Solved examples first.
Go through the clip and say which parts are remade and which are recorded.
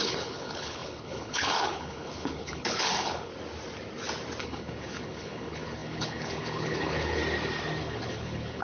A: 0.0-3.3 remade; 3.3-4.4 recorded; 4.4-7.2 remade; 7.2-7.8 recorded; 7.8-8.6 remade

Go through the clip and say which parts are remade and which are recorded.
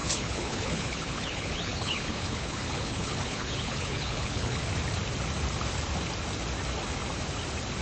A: 0.0-4.7 remade; 4.7-7.8 recorded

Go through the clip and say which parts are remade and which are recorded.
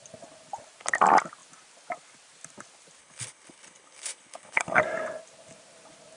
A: 0.0-3.0 recorded; 3.0-4.8 remade; 4.8-6.2 recorded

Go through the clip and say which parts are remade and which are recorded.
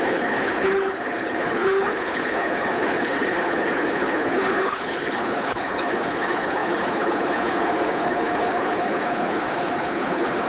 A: 0.0-10.5 remade